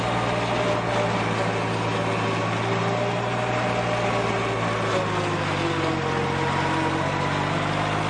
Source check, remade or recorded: recorded